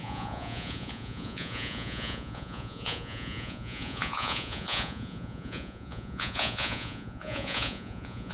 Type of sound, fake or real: fake